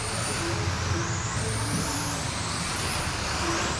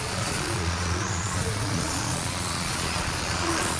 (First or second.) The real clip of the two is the first